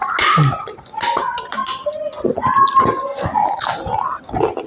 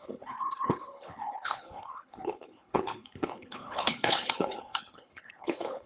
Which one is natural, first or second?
first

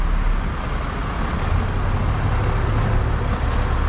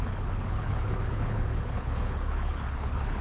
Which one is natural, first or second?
first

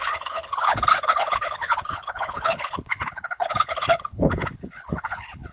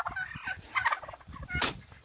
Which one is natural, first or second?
second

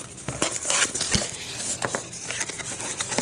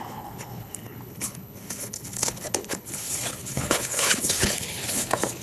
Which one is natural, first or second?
first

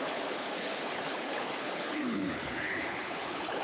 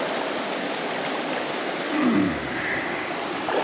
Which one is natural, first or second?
second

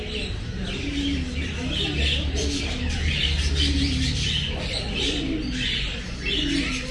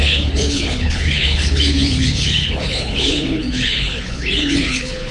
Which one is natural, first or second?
first